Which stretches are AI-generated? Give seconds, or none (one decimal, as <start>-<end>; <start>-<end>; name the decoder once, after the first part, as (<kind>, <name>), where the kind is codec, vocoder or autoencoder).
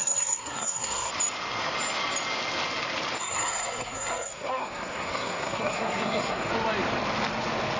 0.0-1.1 (codec, SNAC); 3.2-6.5